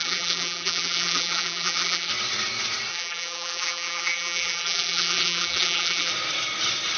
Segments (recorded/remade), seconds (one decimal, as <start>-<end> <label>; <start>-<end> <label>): 0.0-2.1 remade; 2.1-2.9 recorded; 2.9-6.1 remade; 6.1-7.0 recorded